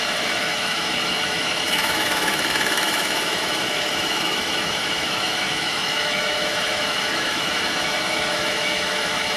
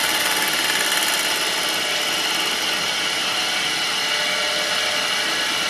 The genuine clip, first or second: second